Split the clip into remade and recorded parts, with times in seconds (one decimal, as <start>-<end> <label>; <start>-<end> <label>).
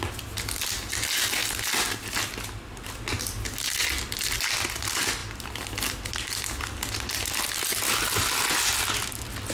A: 0.0-9.5 recorded